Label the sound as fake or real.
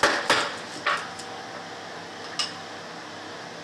real